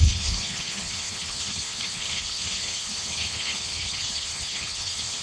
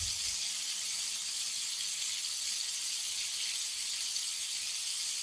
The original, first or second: second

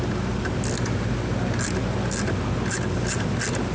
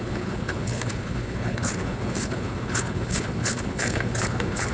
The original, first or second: first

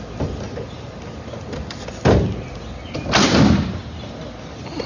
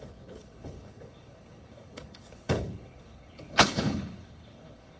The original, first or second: first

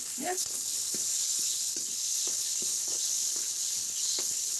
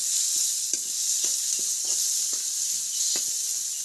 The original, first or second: second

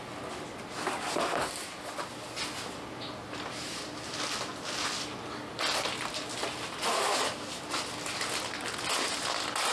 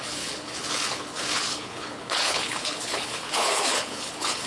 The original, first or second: first